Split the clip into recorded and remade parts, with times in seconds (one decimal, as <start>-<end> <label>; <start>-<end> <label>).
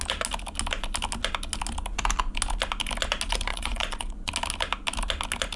0.0-3.5 recorded; 3.5-4.3 remade; 4.3-5.6 recorded